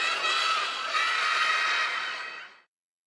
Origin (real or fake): fake